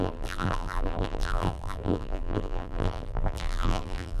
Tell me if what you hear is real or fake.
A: fake